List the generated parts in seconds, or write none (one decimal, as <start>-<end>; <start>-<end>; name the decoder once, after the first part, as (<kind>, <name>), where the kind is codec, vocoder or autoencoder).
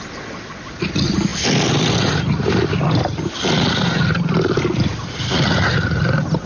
none